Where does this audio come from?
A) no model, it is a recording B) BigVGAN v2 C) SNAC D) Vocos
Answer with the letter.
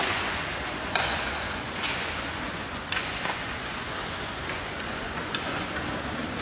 D